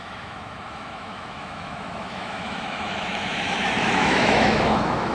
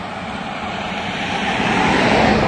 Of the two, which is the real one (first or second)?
second